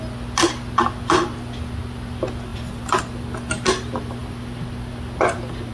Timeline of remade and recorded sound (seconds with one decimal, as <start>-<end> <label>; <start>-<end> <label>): 0.0-2.5 recorded; 2.5-3.0 remade; 3.0-5.7 recorded